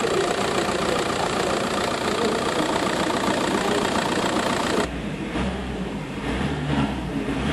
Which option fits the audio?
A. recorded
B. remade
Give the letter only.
B